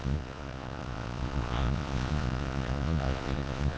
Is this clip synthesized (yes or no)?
yes